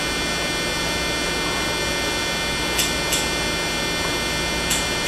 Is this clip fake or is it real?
real